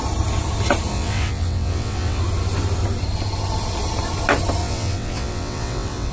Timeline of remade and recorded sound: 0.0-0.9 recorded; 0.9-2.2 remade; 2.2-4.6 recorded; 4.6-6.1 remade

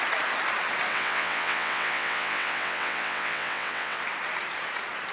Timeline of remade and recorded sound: 0.0-0.9 recorded; 0.9-4.0 remade; 4.0-5.1 recorded

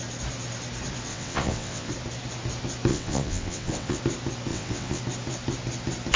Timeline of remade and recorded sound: 0.0-1.1 recorded; 1.1-1.9 remade; 1.9-2.9 recorded; 2.9-4.0 remade; 4.0-4.5 recorded; 4.5-5.0 remade; 5.0-6.2 recorded

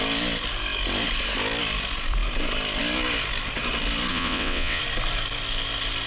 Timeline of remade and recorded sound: 0.0-4.1 recorded; 4.1-4.8 remade; 4.8-6.1 recorded

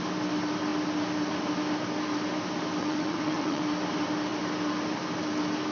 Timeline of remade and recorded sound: 0.0-2.8 recorded; 2.8-3.6 remade; 3.6-5.7 recorded